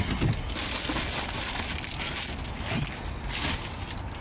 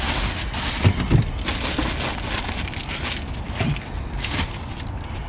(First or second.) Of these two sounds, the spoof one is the second